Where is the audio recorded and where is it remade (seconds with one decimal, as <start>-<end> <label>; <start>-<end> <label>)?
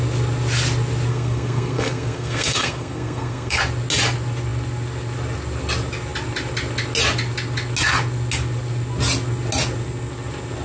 0.0-1.1 recorded; 1.1-3.6 remade; 3.6-10.6 recorded